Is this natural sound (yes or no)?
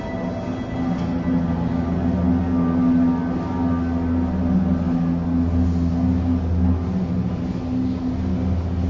yes